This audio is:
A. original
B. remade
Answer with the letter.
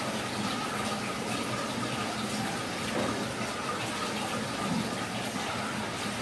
A